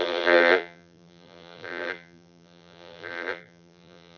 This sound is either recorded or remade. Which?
remade